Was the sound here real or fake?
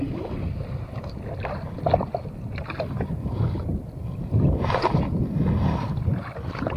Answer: real